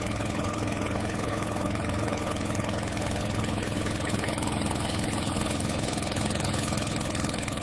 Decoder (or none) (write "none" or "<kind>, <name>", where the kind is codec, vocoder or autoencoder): codec, HILCodec